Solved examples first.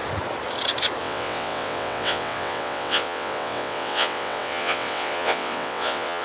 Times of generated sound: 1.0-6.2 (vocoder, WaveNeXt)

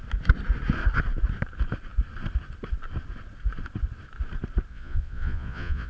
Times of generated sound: 4.7-5.9 (vocoder, Vocos)